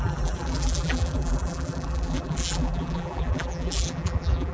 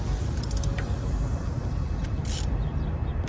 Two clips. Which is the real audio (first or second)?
second